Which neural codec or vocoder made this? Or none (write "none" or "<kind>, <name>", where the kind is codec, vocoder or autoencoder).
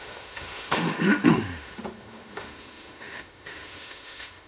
autoencoder, DAC-VAE